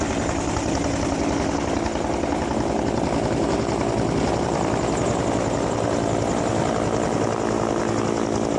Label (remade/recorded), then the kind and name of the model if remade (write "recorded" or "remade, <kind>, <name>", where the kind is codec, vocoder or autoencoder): recorded